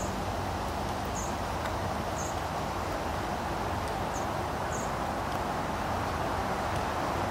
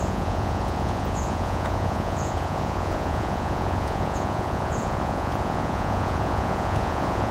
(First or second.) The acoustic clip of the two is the first